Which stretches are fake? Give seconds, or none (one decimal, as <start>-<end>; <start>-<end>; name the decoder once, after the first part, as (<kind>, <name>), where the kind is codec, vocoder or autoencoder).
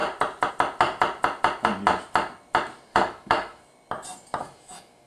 2.9-3.6 (autoencoder, DAC-VAE); 4.4-5.1